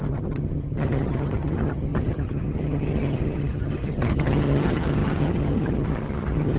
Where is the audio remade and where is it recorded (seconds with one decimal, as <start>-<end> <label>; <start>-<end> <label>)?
0.0-6.6 remade